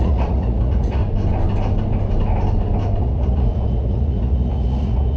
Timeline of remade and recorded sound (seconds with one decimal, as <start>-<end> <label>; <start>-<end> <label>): 0.0-1.0 remade; 1.0-3.0 recorded; 3.0-5.2 remade